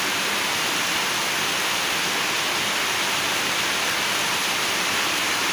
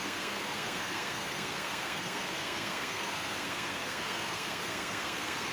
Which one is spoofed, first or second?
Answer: second